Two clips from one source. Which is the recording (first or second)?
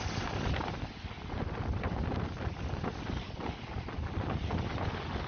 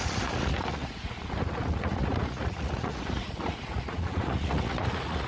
first